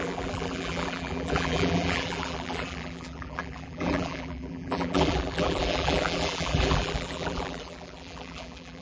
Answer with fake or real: fake